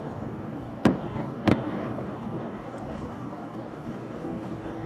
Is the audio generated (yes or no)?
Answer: yes